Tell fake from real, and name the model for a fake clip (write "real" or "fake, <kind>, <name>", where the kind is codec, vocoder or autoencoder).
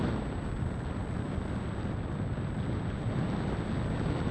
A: real